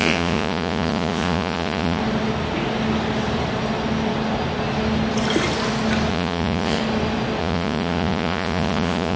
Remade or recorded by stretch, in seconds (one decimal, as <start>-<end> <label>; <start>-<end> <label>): 0.0-2.0 remade; 2.0-6.1 recorded; 6.1-6.8 remade; 6.8-7.4 recorded; 7.4-9.2 remade